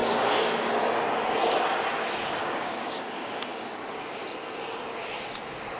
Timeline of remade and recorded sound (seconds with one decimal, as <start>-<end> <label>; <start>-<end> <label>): 0.0-0.7 remade; 0.7-2.4 recorded; 2.4-3.7 remade; 3.7-5.8 recorded